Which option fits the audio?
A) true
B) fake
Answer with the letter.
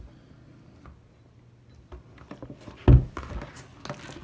A